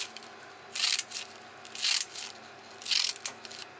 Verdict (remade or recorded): recorded